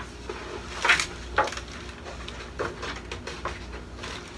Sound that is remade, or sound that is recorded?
recorded